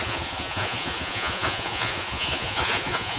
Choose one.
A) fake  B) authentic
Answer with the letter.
A